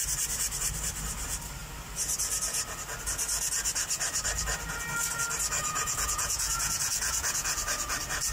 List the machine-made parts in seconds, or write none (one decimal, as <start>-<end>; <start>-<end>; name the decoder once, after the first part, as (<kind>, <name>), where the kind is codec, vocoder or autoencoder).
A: 5.6-7.6 (vocoder, Vocos)